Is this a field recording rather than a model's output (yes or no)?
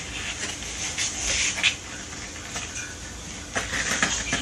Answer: yes